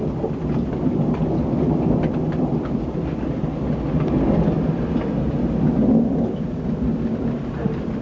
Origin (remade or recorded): recorded